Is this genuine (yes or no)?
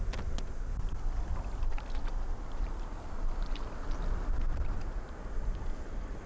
yes